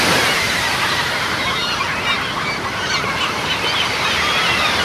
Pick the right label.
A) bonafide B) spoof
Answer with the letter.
A